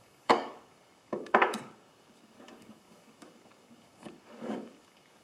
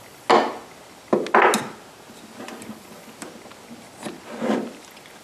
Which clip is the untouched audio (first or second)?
second